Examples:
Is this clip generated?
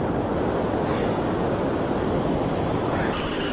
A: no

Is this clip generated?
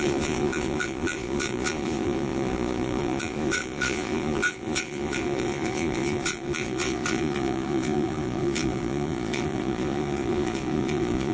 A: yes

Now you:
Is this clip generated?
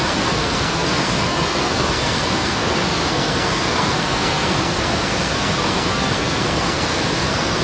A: yes